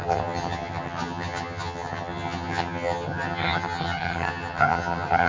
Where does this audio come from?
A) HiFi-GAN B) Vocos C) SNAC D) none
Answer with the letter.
A